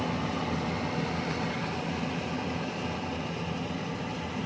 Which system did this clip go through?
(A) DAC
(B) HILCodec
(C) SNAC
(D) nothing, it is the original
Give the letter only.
D